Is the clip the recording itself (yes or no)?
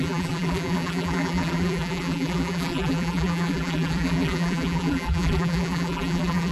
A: no